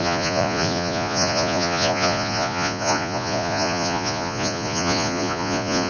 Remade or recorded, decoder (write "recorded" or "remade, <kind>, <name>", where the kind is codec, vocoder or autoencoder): remade, vocoder, Vocos